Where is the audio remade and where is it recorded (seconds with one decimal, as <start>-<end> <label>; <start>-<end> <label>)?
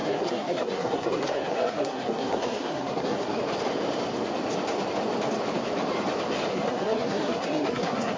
0.0-3.4 remade; 3.4-6.5 recorded; 6.5-8.2 remade